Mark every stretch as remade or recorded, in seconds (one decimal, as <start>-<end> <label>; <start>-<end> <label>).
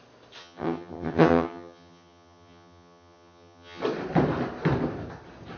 0.0-0.4 recorded; 0.4-3.8 remade; 3.8-5.6 recorded